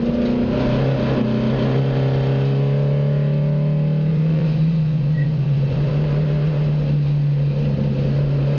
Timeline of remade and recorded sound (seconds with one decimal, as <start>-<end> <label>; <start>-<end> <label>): 0.0-4.1 recorded; 4.1-5.9 remade; 5.9-8.6 recorded